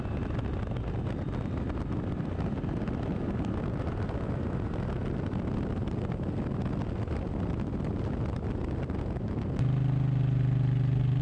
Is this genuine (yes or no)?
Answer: yes